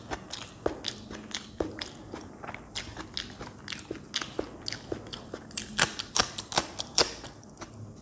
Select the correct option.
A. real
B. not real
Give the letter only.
A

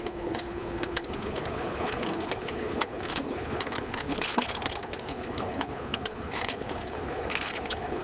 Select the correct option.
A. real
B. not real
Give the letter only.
B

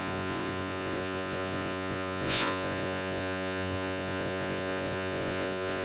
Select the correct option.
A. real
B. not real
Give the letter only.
B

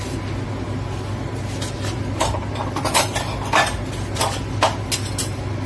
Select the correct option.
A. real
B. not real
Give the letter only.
A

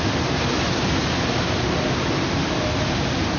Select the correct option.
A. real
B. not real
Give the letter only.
A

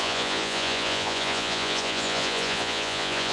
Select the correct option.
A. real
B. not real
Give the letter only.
B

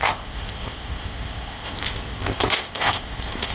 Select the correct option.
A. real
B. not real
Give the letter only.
B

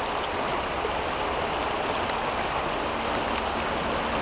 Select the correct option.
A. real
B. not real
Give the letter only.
A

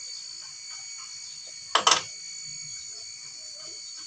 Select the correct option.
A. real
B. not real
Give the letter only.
A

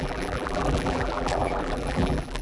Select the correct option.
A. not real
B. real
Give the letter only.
A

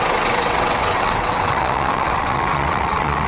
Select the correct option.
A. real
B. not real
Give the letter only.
B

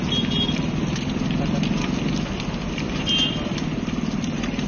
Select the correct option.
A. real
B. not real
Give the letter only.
A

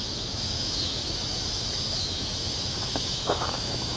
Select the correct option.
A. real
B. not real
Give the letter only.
B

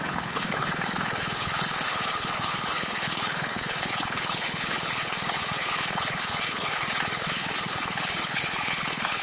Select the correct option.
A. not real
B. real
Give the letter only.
A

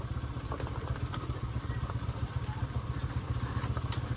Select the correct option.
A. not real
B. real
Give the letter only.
B